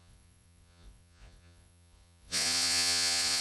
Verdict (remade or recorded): remade